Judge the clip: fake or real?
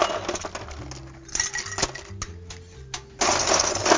real